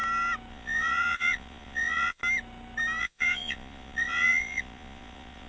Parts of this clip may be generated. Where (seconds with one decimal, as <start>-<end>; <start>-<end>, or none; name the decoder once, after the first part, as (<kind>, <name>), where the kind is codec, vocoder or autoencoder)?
0.5-2.2 (vocoder, Vocos); 3.0-5.5

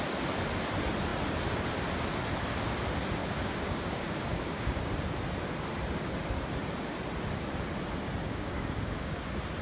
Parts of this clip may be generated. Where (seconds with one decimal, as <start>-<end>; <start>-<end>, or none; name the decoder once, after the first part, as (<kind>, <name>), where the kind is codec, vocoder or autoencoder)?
3.2-4.8 (codec, DAC); 8.2-9.2